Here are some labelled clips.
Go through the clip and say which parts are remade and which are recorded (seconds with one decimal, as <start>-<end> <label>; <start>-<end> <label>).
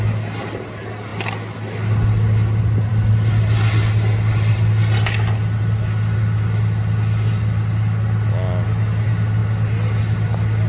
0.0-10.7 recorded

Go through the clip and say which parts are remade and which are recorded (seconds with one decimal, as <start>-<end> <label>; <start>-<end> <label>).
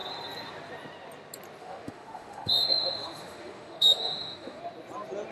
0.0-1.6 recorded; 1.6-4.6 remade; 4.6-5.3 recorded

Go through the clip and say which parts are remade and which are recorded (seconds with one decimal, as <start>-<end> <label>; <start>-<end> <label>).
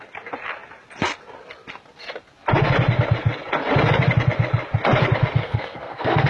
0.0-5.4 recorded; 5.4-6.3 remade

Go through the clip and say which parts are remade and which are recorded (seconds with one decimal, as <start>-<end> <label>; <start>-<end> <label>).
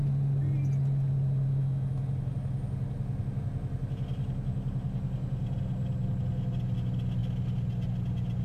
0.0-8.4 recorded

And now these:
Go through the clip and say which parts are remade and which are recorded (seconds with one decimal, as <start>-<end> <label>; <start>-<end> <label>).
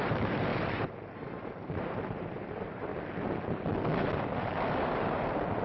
0.0-2.9 remade; 2.9-4.0 recorded; 4.0-5.6 remade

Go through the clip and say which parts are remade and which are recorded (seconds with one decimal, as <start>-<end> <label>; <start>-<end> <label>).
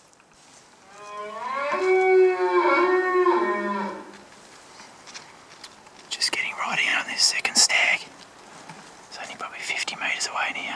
0.0-6.9 recorded; 6.9-7.7 remade; 7.7-10.8 recorded